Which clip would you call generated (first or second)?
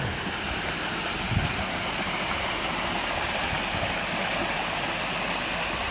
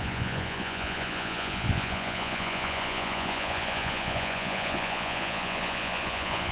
second